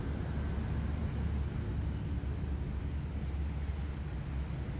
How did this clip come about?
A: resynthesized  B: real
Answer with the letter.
B